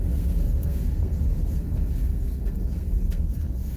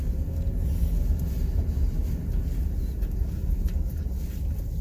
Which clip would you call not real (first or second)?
first